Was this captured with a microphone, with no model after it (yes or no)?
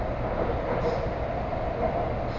yes